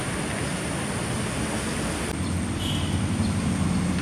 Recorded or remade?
recorded